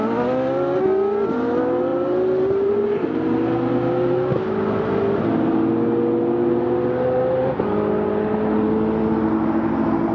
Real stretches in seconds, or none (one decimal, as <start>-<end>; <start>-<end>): 0.0-1.9; 2.7-10.1

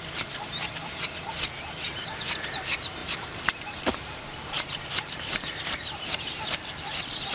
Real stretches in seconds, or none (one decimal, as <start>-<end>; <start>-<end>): 0.0-3.0

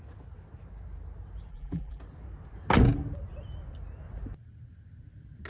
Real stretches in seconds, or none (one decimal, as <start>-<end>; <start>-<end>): 0.0-1.5; 2.0-5.5

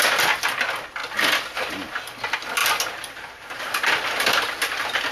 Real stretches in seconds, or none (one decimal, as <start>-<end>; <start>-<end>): 0.0-5.1

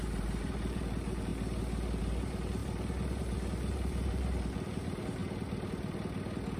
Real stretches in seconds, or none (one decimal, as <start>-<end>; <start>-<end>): 1.3-2.0; 5.2-6.6

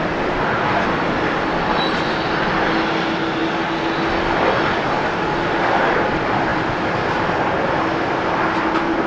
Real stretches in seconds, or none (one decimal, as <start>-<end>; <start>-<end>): 0.0-9.1